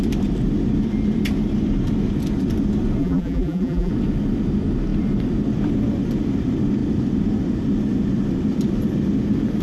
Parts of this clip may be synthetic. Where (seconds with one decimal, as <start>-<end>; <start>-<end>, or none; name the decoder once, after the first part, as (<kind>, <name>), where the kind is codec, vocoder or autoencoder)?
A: 3.0-3.9 (vocoder, BigVGAN v2)